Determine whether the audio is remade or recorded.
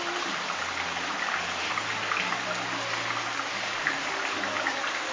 recorded